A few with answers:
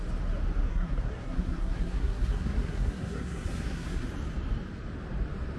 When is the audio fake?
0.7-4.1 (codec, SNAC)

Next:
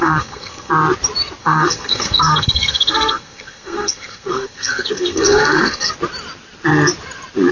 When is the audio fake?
0.0-0.7 (codec, SNAC); 1.4-5.9

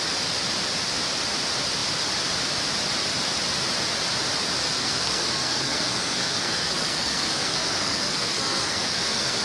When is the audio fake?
4.6-9.4 (codec, SNAC)